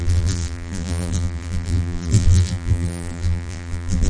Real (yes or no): no